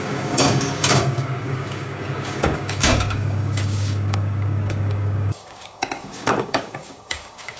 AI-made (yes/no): yes